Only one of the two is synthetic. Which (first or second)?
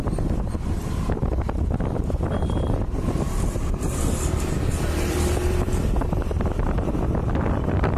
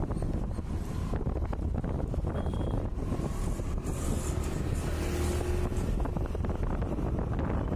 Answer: first